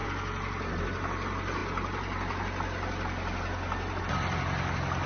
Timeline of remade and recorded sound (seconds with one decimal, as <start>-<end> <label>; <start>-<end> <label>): 0.0-5.1 recorded